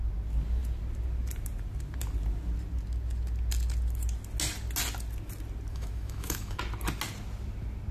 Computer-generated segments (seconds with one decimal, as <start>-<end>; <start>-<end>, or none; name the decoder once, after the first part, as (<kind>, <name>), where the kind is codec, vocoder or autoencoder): 5.7-6.6 (autoencoder, DAC-VAE)